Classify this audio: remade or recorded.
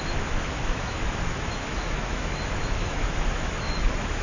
remade